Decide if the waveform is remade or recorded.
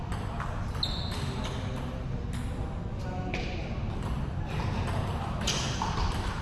recorded